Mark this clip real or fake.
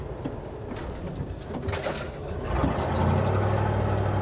real